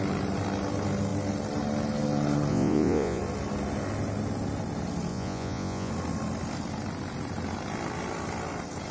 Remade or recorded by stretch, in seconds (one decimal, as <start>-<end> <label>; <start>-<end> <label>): 0.0-2.5 recorded; 2.5-3.2 remade; 3.2-5.1 recorded; 5.1-5.9 remade; 5.9-8.9 recorded